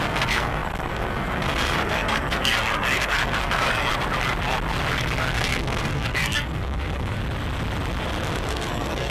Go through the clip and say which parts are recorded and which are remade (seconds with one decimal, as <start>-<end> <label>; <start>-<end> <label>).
0.0-3.9 remade; 3.9-5.3 recorded; 5.3-7.2 remade; 7.2-8.5 recorded; 8.5-9.1 remade